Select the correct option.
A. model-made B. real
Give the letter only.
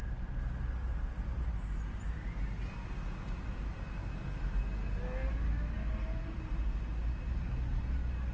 B